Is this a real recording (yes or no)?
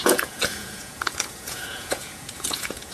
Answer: no